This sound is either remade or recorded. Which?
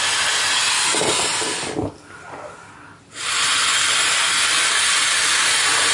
recorded